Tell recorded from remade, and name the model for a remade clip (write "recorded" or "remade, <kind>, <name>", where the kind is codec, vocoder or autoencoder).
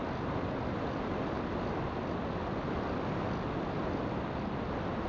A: recorded